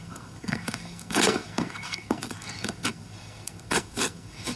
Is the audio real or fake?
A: fake